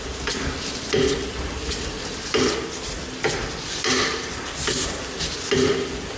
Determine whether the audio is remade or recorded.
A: recorded